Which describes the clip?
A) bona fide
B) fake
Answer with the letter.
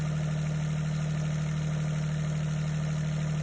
A